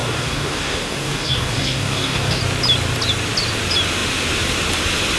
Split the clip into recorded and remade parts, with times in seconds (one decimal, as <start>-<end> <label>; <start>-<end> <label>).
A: 0.0-2.4 remade; 2.4-5.2 recorded